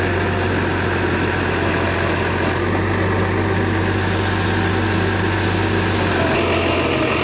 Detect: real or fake real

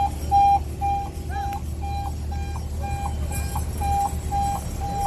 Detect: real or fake real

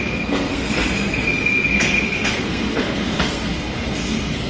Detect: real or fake fake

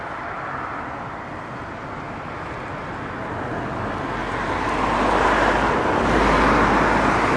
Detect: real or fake real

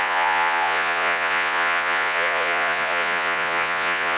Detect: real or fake fake